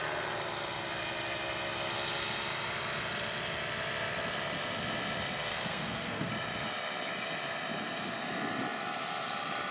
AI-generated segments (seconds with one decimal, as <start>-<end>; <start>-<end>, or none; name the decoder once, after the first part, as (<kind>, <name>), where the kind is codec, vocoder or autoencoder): 5.5-6.3 (codec, SNAC)